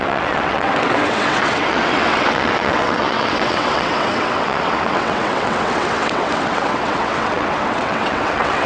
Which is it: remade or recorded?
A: remade